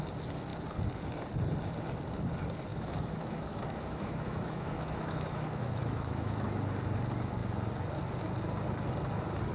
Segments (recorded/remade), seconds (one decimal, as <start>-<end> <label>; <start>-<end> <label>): 0.0-2.7 recorded; 2.7-6.4 remade; 6.4-9.5 recorded

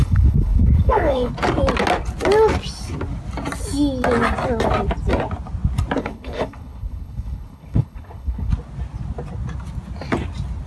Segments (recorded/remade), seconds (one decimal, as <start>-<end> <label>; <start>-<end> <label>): 0.0-1.3 remade; 1.3-6.0 recorded; 6.0-8.5 remade; 8.5-10.7 recorded

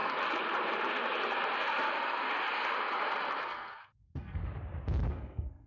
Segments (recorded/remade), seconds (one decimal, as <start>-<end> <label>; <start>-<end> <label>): 0.0-3.4 recorded; 3.4-4.4 remade; 4.4-5.1 recorded; 5.1-5.7 remade

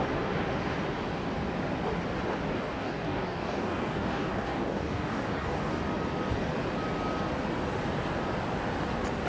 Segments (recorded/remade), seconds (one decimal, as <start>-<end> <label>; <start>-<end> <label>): 0.0-2.5 recorded; 2.5-5.8 remade; 5.8-9.3 recorded

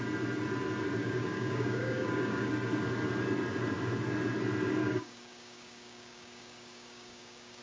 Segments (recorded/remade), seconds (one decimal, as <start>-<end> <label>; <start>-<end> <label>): 0.0-1.0 recorded; 1.0-2.5 remade; 2.5-4.8 recorded; 4.8-7.6 remade

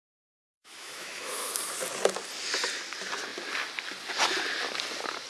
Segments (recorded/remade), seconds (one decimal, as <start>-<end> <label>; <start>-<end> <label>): 0.0-1.6 remade; 1.6-5.3 recorded